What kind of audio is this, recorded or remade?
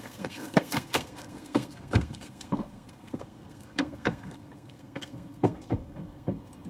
remade